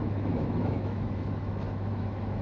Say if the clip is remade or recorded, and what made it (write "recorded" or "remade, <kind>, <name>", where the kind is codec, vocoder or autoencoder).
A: remade, autoencoder, DAC-VAE